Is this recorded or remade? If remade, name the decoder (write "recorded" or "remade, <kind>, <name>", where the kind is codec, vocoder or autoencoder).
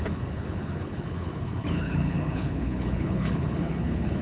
remade, codec, HILCodec